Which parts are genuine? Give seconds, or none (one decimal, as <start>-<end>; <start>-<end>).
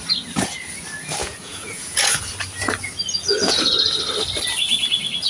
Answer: 0.0-1.2; 2.2-5.3